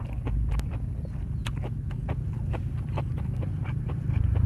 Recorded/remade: recorded